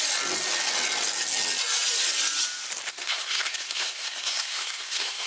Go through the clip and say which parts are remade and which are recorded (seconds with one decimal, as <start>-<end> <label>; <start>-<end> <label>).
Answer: 0.0-2.9 recorded; 2.9-5.3 remade